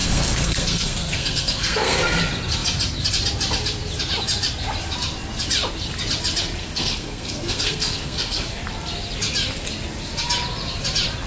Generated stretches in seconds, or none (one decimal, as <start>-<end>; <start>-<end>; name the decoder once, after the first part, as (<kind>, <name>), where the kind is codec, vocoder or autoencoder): 0.0-2.2 (codec, SNAC); 6.6-8.6